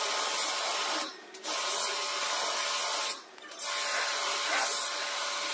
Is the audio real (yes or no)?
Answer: yes